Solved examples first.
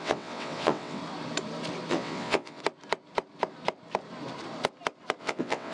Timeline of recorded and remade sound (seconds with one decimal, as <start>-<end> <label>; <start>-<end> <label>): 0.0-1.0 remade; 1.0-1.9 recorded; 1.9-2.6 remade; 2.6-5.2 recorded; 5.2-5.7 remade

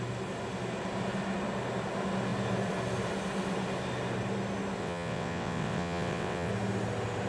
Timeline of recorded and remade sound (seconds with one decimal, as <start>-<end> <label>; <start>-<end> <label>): 0.0-4.8 recorded; 4.8-6.5 remade; 6.5-7.3 recorded

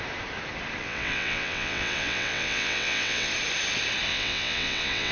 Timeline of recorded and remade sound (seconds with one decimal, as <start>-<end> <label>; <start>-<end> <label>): 0.0-0.8 recorded; 0.8-3.3 remade; 3.3-4.1 recorded; 4.1-5.1 remade

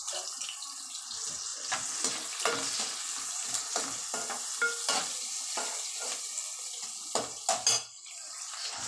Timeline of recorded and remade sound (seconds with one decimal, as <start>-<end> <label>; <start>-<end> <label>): 0.0-8.9 recorded

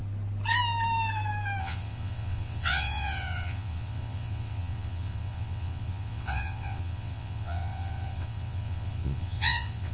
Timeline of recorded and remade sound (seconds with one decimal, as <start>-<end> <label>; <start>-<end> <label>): 0.0-1.6 recorded; 1.6-9.9 remade

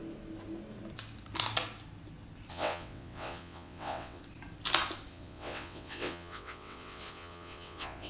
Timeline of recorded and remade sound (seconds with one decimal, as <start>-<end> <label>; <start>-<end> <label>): 0.0-2.5 recorded; 2.5-4.2 remade; 4.2-5.1 recorded; 5.1-8.1 remade

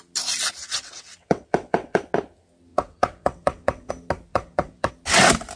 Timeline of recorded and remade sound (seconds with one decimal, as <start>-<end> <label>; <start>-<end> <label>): 0.0-0.6 recorded; 0.6-2.0 remade; 2.0-2.7 recorded; 2.7-3.9 remade; 3.9-4.3 recorded; 4.3-4.9 remade; 4.9-5.6 recorded